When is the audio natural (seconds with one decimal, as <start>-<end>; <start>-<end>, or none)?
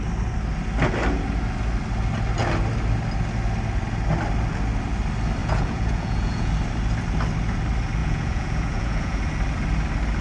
0.0-5.4; 6.5-8.0; 9.2-10.2